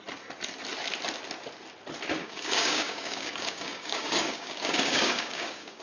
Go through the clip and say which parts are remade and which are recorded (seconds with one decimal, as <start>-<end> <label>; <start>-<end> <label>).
0.0-2.2 recorded; 2.2-5.8 remade